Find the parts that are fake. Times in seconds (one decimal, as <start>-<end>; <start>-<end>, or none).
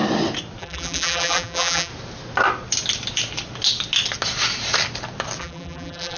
0.6-1.9; 5.4-6.2